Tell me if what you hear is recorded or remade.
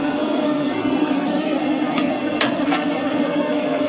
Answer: remade